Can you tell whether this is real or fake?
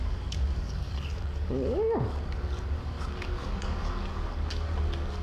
fake